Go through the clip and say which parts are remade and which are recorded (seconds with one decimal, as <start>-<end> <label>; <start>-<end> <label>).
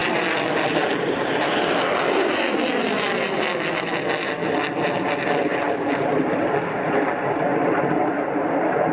0.0-2.9 remade; 2.9-5.5 recorded; 5.5-6.1 remade; 6.1-8.9 recorded